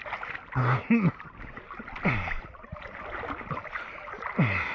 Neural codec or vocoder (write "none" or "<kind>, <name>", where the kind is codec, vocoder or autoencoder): none